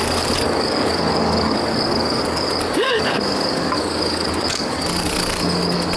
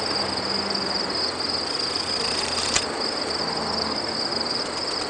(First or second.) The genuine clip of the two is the second